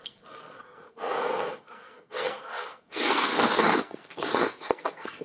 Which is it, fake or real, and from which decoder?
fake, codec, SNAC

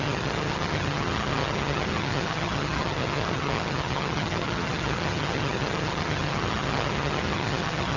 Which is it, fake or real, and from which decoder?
fake, vocoder, HiFi-GAN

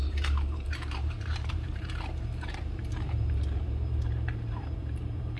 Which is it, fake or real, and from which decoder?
fake, vocoder, BigVGAN v2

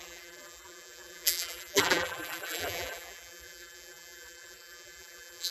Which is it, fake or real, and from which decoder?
fake, vocoder, BigVGAN v2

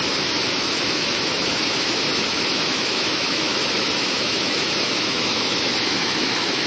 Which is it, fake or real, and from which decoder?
fake, autoencoder, DAC-VAE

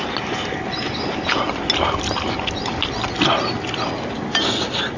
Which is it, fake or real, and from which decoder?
real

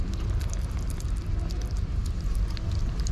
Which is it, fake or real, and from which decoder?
real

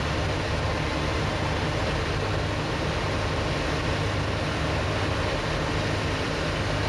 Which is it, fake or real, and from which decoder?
real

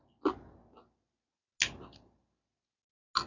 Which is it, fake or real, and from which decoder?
real